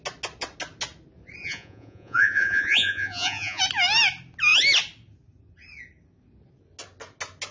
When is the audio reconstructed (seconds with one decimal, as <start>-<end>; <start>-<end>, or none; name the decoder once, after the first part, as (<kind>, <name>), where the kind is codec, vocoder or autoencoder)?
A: 1.4-3.6 (vocoder, Vocos)